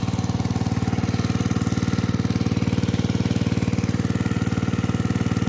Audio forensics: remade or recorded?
recorded